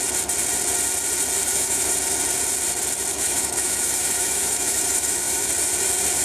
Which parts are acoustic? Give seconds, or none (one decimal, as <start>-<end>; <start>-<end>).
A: 0.0-1.4; 1.9-3.1; 5.5-6.2